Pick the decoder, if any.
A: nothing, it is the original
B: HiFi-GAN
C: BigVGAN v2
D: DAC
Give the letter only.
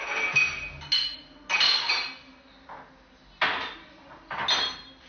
A